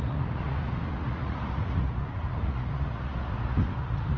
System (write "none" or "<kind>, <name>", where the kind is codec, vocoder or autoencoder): vocoder, Vocos